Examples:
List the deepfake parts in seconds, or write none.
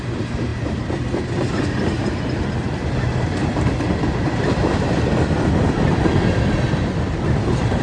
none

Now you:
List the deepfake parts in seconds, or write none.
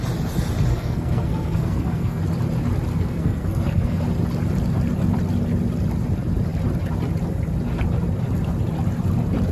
0.7-2.2 (codec, SNAC); 2.9-4.0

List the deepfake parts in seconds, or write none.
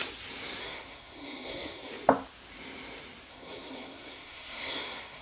0.6-1.9 (codec, SNAC); 3.3-5.2